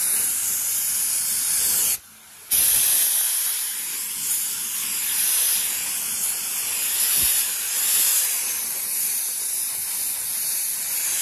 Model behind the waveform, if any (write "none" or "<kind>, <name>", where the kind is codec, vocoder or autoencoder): none